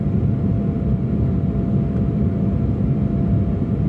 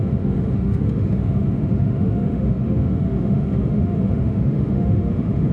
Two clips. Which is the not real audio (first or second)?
second